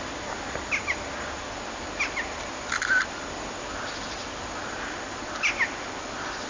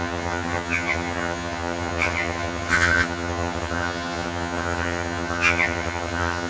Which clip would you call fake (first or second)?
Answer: second